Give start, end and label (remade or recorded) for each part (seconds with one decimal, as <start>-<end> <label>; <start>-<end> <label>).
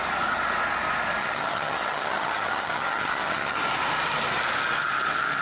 0.0-1.2 recorded; 1.2-3.6 remade; 3.6-5.4 recorded